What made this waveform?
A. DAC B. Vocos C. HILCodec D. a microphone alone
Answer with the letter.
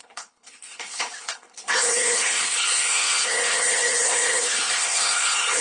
C